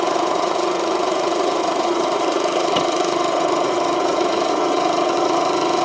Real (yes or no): no